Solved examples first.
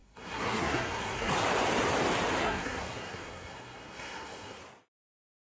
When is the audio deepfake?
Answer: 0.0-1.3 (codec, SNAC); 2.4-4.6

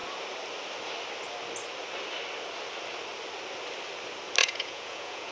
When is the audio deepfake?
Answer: 4.4-5.3 (vocoder, Vocos)

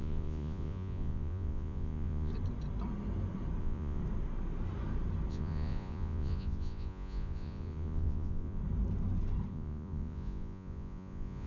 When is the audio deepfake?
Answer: 0.0-2.3 (vocoder, Vocos); 3.6-4.0; 5.3-8.6; 9.5-11.5